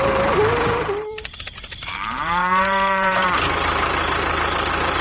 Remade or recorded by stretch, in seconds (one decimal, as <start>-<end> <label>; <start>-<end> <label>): 0.0-5.0 remade